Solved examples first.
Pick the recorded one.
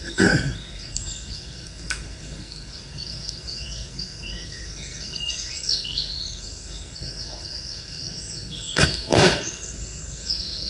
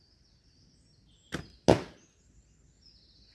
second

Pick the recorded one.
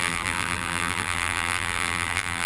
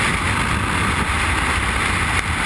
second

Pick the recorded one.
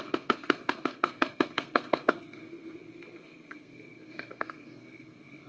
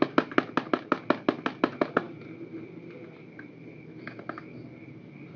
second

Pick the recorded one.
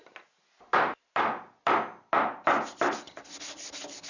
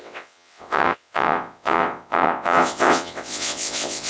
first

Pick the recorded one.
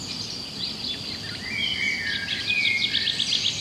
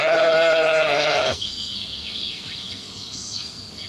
first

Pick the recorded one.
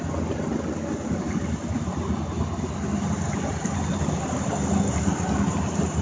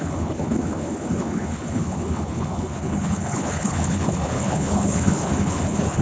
first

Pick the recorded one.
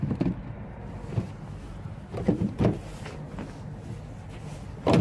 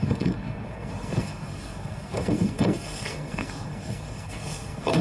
first